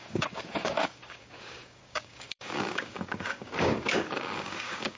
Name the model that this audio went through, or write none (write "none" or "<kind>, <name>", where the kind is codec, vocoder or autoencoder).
codec, DAC